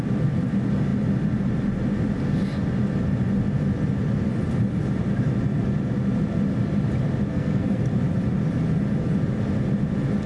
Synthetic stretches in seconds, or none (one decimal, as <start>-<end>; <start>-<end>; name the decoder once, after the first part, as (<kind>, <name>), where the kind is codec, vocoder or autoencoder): 7.3-7.8 (codec, SNAC)